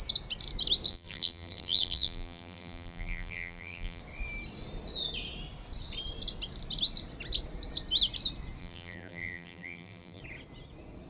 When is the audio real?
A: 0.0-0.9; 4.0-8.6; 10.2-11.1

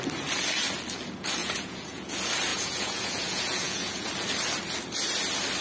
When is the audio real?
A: 0.0-1.4; 2.1-2.5; 4.1-5.6

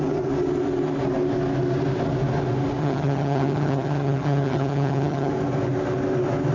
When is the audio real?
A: 0.0-2.8; 5.3-6.5

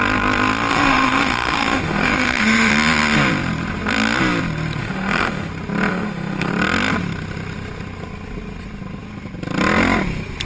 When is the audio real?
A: 0.0-0.7; 2.7-4.8; 5.5-5.9; 6.5-10.5

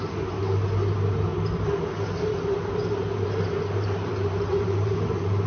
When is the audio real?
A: 0.0-1.3; 1.8-2.8

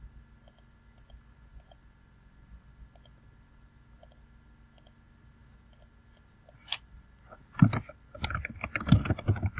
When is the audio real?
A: 0.0-9.6